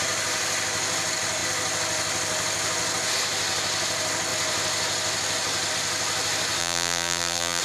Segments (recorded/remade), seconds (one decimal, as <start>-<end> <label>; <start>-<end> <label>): 0.0-6.6 recorded; 6.6-7.6 remade